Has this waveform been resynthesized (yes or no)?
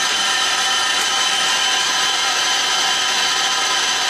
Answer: yes